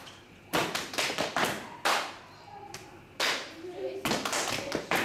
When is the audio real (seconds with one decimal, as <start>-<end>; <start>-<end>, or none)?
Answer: 3.8-4.5

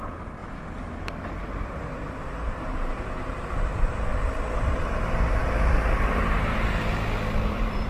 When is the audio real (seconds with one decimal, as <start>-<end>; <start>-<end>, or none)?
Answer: 0.4-1.7; 4.1-4.8; 5.4-7.5

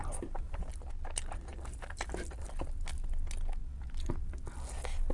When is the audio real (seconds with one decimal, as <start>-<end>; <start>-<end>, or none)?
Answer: 0.7-1.5; 2.4-5.1

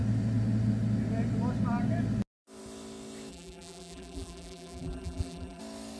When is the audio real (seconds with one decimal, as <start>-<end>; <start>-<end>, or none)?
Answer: 0.0-3.3; 5.6-6.0

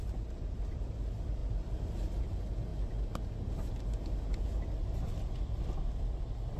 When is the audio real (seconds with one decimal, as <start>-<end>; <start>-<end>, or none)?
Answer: 2.7-4.2

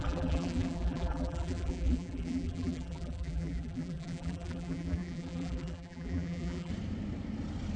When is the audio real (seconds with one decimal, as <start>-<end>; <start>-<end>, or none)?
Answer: 6.7-7.8

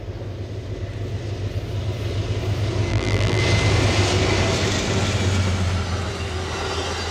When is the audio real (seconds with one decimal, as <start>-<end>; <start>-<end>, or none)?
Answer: 0.0-2.9; 3.4-7.1